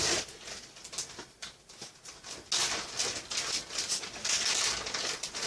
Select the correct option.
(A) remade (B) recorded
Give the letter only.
B